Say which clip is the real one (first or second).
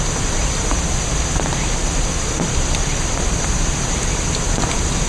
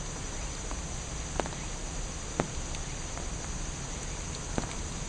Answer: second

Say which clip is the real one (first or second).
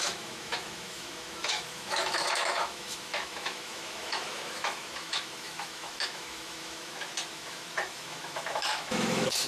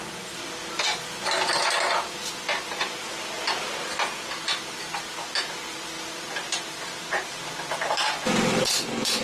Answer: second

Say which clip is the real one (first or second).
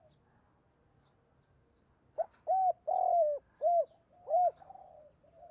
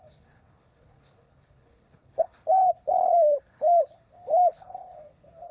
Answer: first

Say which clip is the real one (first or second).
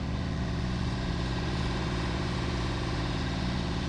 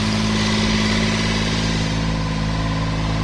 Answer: second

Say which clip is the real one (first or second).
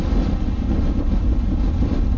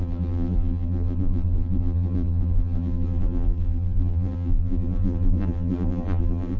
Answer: first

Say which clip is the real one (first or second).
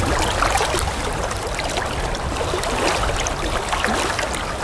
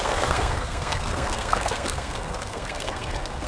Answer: first